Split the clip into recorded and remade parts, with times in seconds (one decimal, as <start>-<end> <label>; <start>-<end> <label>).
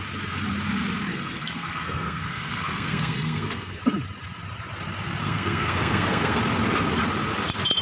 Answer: 0.0-1.1 recorded; 1.1-3.8 remade; 3.8-5.2 recorded; 5.2-6.4 remade; 6.4-7.8 recorded